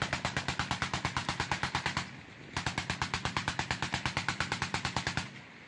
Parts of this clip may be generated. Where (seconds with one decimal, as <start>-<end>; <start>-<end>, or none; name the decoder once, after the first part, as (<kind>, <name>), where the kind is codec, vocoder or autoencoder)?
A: none